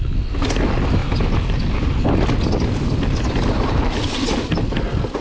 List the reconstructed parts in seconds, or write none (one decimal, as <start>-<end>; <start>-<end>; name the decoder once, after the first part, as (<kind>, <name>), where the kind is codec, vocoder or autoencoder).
none